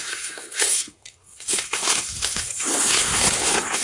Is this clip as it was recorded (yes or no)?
no